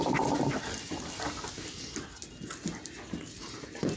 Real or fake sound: real